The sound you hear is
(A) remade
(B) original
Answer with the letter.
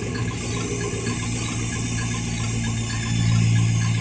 B